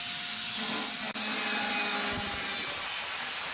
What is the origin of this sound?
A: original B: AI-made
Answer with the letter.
A